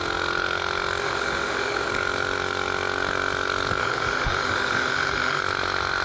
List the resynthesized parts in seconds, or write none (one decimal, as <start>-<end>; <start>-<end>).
1.0-1.9; 3.8-5.4